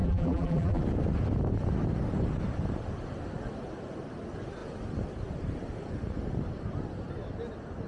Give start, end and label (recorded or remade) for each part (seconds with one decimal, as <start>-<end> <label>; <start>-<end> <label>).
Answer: 0.0-0.8 remade; 0.8-7.9 recorded